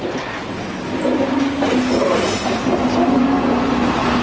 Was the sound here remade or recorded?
recorded